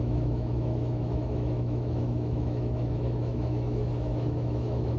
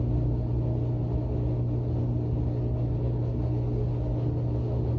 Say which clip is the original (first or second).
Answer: second